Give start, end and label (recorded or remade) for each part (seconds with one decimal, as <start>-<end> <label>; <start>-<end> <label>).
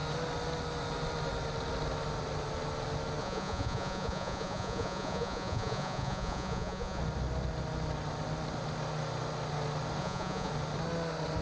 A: 0.0-3.2 recorded; 3.2-7.0 remade; 7.0-10.0 recorded; 10.0-10.5 remade; 10.5-11.4 recorded